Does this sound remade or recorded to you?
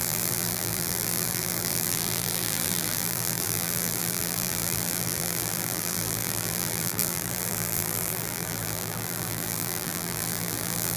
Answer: remade